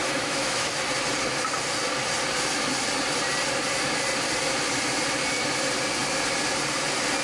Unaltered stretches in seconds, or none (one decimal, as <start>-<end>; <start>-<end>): 0.7-7.2